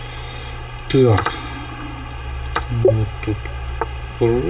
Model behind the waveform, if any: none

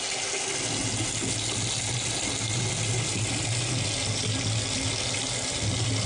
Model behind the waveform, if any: none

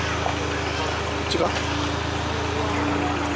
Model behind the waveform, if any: none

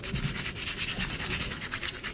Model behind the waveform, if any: none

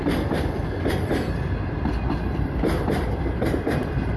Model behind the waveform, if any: vocoder, BigVGAN v2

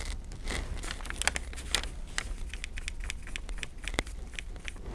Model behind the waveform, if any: none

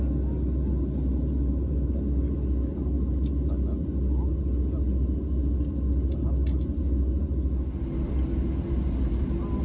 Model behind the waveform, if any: none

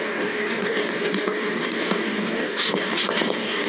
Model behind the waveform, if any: codec, DAC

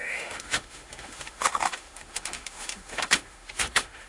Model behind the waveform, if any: autoencoder, DAC-VAE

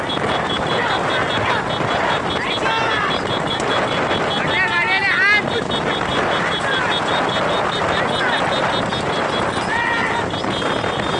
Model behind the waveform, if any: none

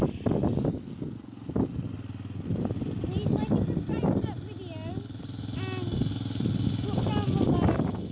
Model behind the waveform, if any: none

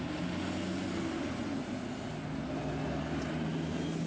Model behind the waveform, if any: none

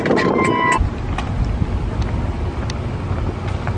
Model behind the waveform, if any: none